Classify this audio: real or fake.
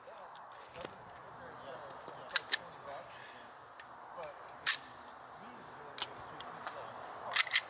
real